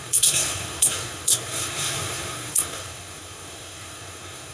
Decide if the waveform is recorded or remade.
remade